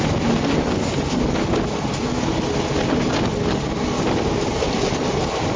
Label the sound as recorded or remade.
recorded